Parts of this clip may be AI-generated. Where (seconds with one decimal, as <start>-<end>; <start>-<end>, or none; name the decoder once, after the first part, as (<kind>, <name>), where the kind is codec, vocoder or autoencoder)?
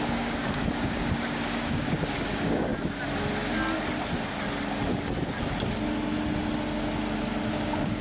0.0-2.7 (codec, DAC); 7.5-8.0